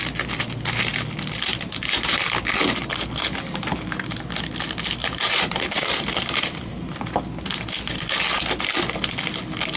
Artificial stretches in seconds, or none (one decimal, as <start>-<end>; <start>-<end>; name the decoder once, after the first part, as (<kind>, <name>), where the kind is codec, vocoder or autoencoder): 1.5-2.2 (vocoder, BigVGAN v2); 5.0-7.2